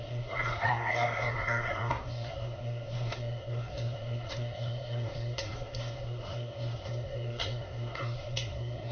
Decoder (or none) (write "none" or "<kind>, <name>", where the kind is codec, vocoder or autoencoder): codec, SNAC